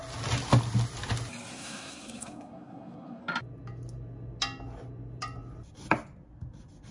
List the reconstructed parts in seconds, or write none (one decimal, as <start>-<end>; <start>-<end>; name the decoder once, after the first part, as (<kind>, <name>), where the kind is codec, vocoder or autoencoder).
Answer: 1.5-3.2 (codec, SNAC)